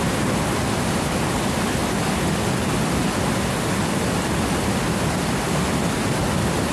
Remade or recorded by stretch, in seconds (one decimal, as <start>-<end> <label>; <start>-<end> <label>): 0.0-6.7 recorded

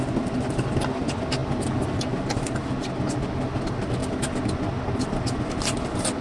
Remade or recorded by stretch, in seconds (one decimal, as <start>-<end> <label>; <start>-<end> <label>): 0.0-6.2 recorded